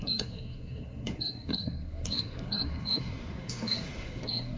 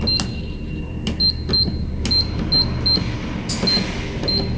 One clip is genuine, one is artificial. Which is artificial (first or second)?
first